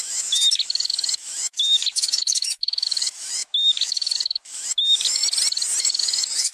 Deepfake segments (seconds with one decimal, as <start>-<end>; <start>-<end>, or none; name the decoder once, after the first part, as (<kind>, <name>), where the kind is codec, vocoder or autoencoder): 0.0-5.2 (autoencoder, DAC-VAE); 5.8-6.5